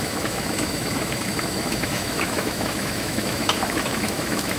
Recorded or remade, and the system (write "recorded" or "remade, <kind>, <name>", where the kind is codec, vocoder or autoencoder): remade, autoencoder, DAC-VAE